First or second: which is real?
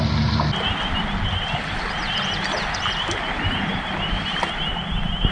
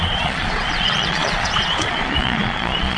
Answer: first